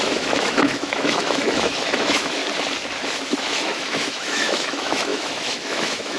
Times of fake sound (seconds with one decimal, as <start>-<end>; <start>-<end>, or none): 0.0-2.4; 3.4-6.2